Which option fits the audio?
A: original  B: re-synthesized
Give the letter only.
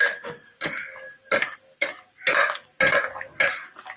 A